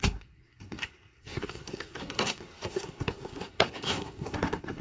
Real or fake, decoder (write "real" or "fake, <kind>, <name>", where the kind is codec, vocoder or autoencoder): fake, codec, SNAC